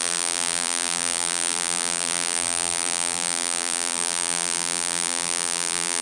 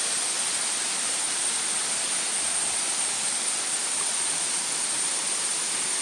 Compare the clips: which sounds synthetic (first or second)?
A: first